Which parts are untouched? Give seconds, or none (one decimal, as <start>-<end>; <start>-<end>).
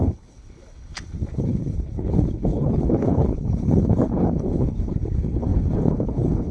none